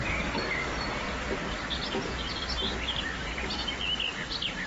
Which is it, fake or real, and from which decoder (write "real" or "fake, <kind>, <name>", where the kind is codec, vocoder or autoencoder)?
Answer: real